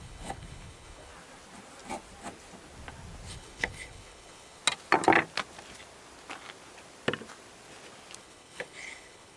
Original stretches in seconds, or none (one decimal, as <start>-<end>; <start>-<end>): 1.1-3.3; 4.6-8.2